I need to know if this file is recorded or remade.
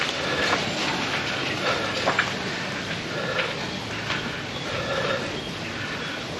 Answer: recorded